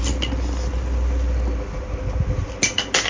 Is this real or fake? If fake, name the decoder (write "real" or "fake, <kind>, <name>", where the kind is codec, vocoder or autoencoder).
real